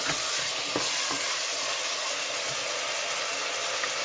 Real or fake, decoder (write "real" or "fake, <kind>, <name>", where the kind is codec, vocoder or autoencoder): real